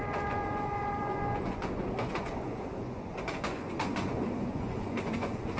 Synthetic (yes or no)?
yes